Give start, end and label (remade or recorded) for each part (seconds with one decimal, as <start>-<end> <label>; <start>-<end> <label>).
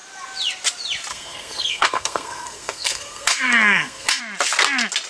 0.0-1.1 recorded; 1.1-4.2 remade; 4.2-5.1 recorded